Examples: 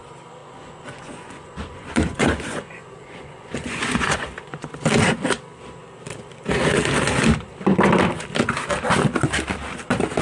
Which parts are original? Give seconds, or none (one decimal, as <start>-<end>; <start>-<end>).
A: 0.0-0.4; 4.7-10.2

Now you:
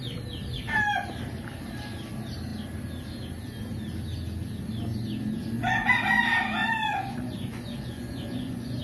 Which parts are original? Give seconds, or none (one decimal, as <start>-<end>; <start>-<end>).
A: 0.0-5.4; 5.9-6.6

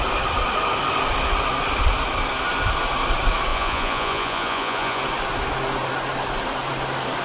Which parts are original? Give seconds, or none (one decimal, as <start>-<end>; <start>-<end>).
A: 0.0-3.5; 5.0-7.2

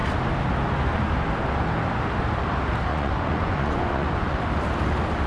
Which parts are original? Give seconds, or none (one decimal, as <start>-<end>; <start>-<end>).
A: 0.0-2.9; 4.4-5.3

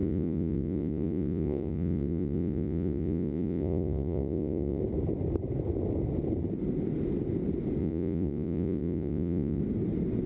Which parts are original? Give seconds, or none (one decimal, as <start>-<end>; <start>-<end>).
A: 4.8-7.8; 9.6-10.3

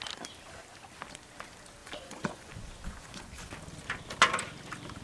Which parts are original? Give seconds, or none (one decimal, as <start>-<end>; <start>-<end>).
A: 0.0-1.8; 3.5-5.0